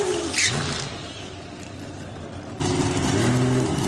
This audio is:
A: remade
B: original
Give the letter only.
B